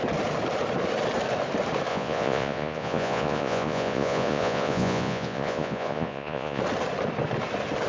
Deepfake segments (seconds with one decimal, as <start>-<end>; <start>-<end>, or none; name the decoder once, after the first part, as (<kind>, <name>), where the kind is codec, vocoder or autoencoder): 1.9-6.6 (vocoder, Vocos)